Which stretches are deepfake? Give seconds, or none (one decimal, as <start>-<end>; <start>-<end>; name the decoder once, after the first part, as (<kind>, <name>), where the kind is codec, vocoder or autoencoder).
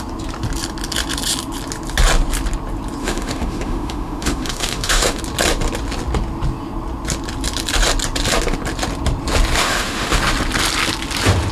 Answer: 3.0-5.2 (autoencoder, DAC-VAE); 9.6-10.2